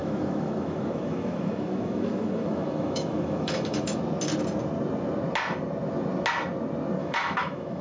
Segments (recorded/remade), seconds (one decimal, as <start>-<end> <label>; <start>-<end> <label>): 0.0-4.0 remade; 4.0-7.0 recorded; 7.0-7.8 remade